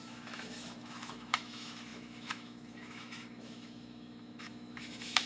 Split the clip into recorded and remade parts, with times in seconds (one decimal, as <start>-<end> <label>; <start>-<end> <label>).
0.0-5.3 remade

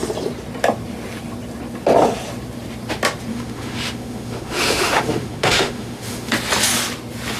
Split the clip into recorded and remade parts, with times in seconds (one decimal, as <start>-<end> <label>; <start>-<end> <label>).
0.0-3.3 recorded; 3.3-6.3 remade; 6.3-7.4 recorded

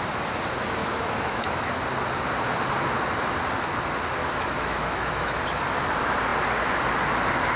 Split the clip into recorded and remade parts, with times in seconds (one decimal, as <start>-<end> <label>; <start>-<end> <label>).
0.0-0.8 recorded; 0.8-1.7 remade; 1.7-4.2 recorded; 4.2-5.4 remade; 5.4-7.6 recorded

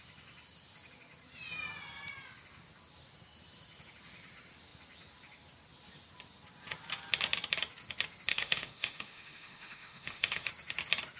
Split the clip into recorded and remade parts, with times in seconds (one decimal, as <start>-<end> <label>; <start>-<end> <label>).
0.0-8.3 recorded; 8.3-10.5 remade; 10.5-11.2 recorded

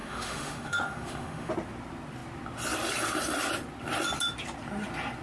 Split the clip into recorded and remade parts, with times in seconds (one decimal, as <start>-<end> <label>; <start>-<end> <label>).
0.0-1.5 remade; 1.5-5.2 recorded

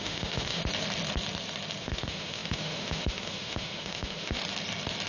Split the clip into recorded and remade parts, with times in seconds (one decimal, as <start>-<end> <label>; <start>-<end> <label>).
0.0-0.6 remade; 0.6-1.8 recorded; 1.8-4.4 remade; 4.4-5.1 recorded